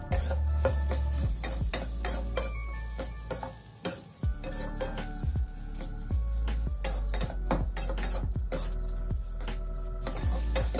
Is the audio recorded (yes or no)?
yes